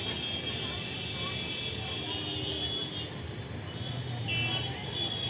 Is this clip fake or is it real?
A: real